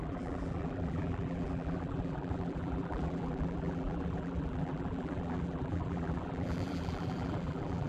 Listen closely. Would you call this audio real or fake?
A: fake